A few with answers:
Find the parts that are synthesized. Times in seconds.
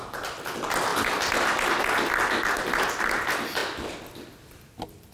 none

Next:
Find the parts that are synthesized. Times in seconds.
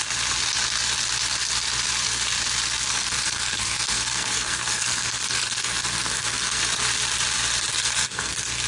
2.9-6.6 (codec, SNAC); 7.7-8.7